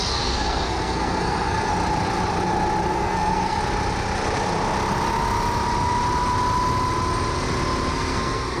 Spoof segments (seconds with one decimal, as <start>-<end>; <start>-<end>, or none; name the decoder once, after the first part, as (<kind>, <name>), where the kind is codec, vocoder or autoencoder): 0.0-1.7 (codec, SNAC); 2.9-3.6; 7.9-8.6